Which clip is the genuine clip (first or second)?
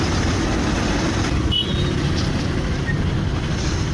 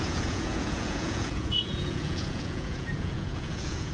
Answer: first